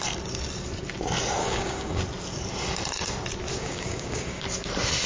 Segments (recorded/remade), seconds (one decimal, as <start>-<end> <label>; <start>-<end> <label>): 0.0-1.4 recorded; 1.4-2.0 remade; 2.0-3.5 recorded; 3.5-4.4 remade; 4.4-5.1 recorded